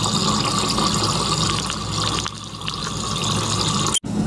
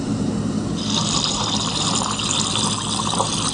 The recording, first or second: first